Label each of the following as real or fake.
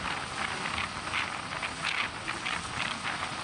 real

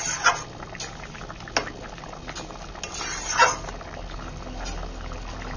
real